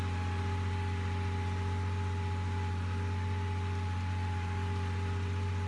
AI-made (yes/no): no